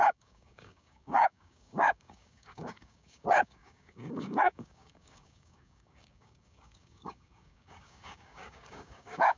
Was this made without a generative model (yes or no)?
no